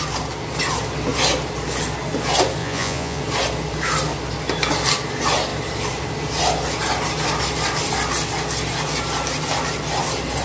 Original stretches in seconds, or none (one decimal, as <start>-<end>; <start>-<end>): 0.0-2.6; 3.2-10.4

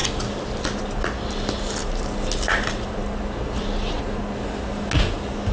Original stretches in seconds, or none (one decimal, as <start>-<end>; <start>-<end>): 0.0-5.5

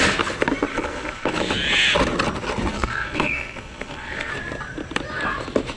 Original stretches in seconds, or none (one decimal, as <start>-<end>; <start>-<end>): 0.0-0.7; 1.5-2.7; 4.3-5.8

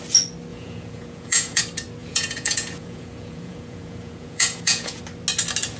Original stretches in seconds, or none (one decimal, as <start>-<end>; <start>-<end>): 0.0-0.5; 1.6-2.0; 5.0-5.8

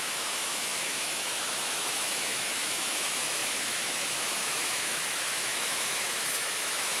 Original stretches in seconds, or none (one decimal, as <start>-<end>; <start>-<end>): none

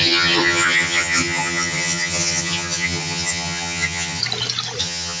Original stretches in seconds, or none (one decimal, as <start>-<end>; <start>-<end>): 4.2-4.8